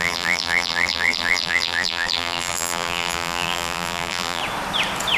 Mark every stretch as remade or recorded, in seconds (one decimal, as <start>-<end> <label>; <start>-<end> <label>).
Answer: 0.0-4.4 remade; 4.4-5.2 recorded